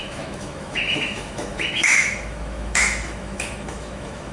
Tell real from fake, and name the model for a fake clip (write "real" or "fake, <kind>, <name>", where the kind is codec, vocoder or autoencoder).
fake, autoencoder, DAC-VAE